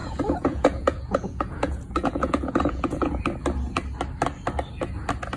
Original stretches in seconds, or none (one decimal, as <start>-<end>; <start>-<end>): 3.2-5.4